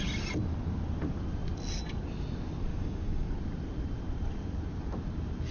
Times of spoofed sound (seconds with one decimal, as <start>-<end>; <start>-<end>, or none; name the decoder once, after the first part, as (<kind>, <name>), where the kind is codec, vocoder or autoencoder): 2.7-3.3 (codec, DAC)